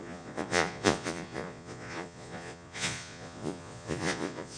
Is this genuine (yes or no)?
no